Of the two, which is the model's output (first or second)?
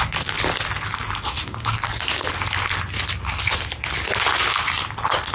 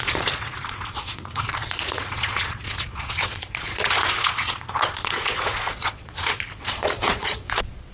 second